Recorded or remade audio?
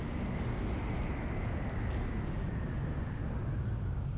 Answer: recorded